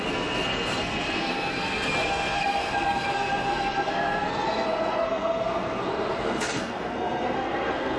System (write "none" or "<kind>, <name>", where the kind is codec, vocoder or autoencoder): codec, SNAC